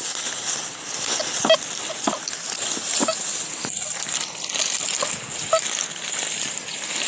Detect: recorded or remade recorded